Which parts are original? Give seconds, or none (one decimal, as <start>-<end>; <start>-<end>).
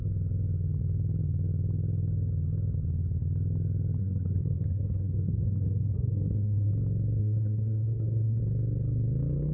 0.0-4.0; 6.7-7.2; 8.4-9.5